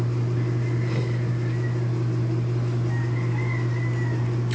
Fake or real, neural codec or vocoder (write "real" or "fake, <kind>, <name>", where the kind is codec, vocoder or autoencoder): real